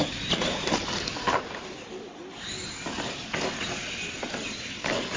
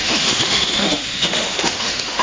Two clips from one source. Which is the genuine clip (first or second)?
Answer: first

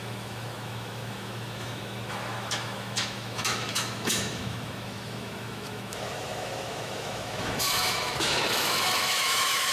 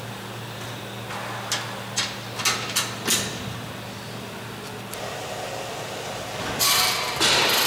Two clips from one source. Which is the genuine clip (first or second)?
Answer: second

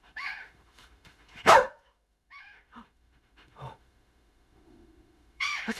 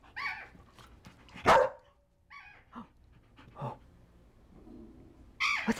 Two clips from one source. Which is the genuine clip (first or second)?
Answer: second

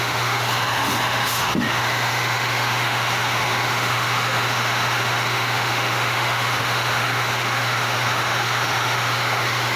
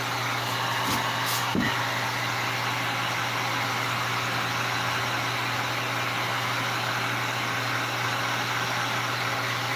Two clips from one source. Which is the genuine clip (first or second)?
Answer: second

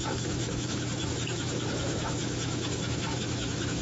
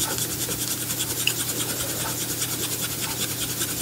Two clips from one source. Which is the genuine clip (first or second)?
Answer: second